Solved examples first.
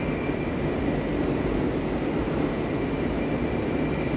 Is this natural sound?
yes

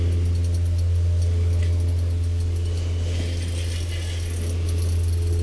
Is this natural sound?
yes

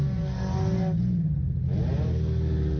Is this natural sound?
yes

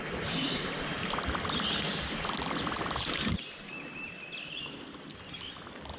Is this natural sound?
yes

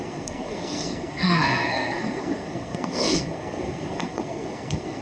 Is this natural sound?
no